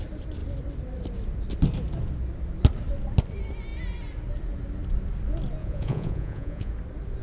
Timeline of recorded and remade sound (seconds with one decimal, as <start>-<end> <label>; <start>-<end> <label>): 0.0-5.6 recorded; 5.6-6.7 remade; 6.7-7.2 recorded